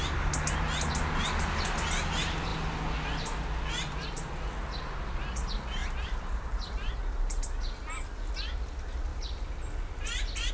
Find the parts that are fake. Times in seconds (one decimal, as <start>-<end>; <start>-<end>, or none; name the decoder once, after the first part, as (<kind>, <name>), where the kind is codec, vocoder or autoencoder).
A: 5.8-7.5 (vocoder, BigVGAN v2); 9.1-10.5